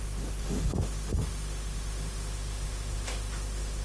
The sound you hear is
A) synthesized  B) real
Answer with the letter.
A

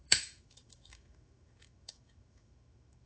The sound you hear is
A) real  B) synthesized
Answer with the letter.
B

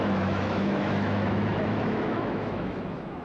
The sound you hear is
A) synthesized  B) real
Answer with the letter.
A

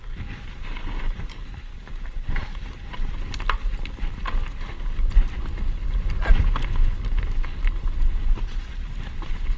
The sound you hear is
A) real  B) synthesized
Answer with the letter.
A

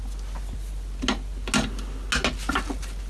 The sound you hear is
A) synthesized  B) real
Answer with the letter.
B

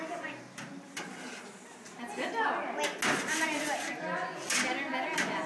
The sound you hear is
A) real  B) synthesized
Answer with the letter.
A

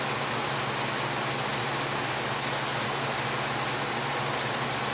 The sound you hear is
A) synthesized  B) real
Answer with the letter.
B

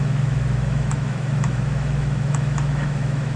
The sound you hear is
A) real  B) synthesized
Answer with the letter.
B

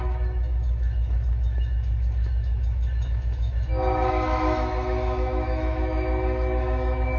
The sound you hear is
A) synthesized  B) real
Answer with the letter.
A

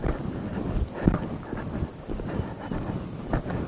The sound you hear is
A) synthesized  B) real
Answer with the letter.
B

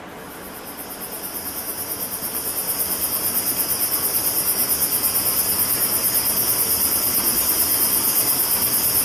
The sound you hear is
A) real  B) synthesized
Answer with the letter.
A